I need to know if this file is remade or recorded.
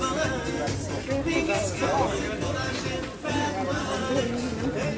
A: recorded